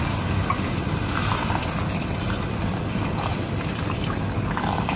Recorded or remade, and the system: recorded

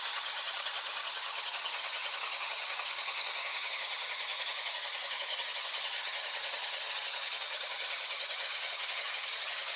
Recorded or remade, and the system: remade, vocoder, HiFi-GAN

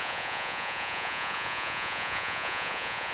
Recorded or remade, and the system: remade, vocoder, Vocos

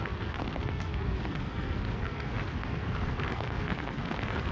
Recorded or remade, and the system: remade, codec, SNAC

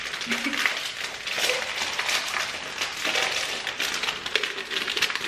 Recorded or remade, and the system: recorded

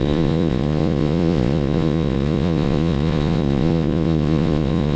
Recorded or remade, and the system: remade, vocoder, Vocos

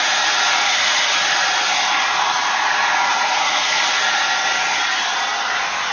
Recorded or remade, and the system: recorded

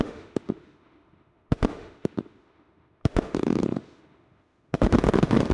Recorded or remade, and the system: remade, autoencoder, DAC-VAE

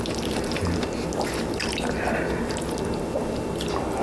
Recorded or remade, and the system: recorded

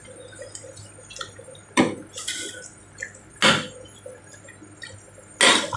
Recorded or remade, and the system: recorded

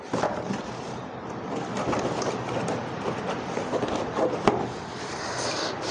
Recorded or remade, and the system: recorded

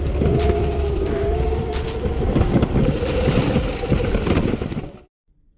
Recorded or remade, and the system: recorded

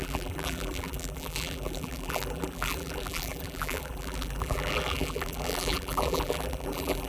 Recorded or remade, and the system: remade, vocoder, BigVGAN v2